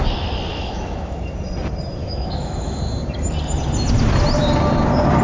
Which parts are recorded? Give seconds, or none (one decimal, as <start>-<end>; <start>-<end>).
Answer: 0.0-0.5; 1.2-2.0; 2.8-5.2